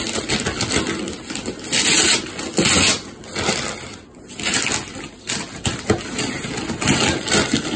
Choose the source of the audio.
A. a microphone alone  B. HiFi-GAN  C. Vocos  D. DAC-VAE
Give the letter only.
A